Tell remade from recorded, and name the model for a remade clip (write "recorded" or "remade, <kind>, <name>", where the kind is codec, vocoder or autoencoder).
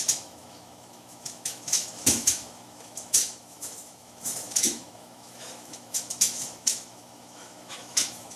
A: remade, autoencoder, DAC-VAE